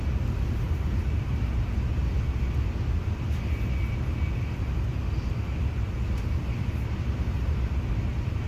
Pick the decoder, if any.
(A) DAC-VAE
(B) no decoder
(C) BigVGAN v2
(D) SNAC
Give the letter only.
B